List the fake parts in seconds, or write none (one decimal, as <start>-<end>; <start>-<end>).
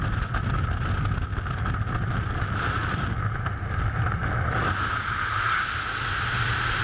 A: none